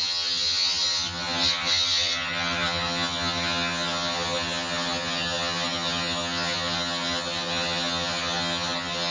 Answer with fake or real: fake